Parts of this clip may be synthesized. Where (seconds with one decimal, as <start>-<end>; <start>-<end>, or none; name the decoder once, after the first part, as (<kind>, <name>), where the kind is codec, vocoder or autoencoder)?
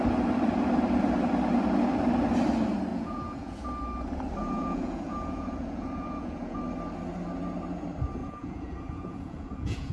2.9-3.6 (vocoder, Vocos); 4.4-6.6; 8.2-9.9